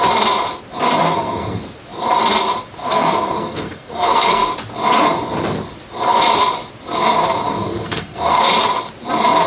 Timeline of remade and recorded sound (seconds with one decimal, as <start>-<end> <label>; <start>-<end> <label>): 0.0-1.0 recorded; 1.0-1.6 remade; 1.6-2.8 recorded; 2.8-4.5 remade; 4.5-7.5 recorded; 7.5-8.5 remade; 8.5-9.5 recorded